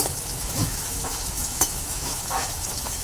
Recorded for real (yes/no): no